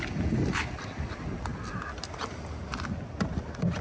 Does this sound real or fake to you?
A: real